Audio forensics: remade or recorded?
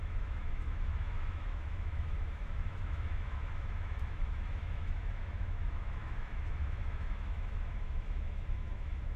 remade